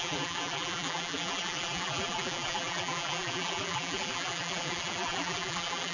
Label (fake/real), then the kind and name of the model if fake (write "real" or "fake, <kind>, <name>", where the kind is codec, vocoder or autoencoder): fake, vocoder, BigVGAN v2